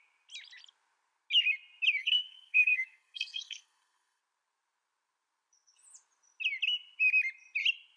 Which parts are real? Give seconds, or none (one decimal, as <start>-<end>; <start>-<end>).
0.0-2.0; 4.2-8.0